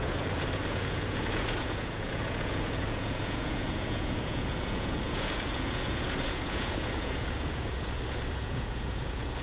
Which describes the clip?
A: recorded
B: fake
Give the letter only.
B